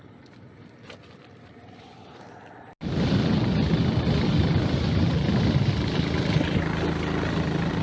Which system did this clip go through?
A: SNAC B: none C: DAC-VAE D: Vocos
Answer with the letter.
B